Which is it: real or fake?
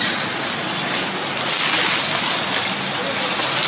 real